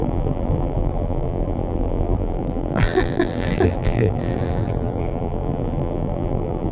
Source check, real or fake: fake